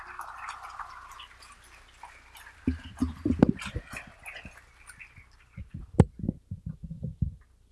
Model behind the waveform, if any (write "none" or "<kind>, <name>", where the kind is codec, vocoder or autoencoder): none